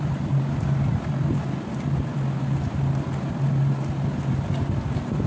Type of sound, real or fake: real